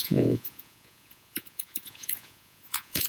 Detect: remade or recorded remade